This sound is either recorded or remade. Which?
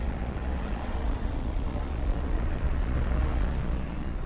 remade